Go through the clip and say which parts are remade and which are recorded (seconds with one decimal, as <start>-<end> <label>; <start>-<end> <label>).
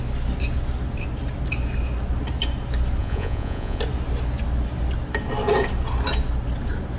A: 0.0-3.0 recorded; 3.0-3.8 remade; 3.8-7.0 recorded